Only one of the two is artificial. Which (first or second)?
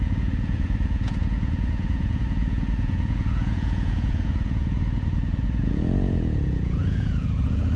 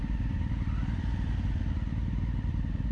first